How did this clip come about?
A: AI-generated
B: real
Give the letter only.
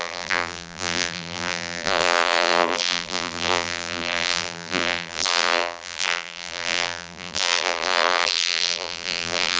A